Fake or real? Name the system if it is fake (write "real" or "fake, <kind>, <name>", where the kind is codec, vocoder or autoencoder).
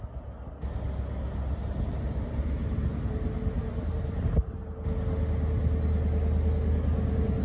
real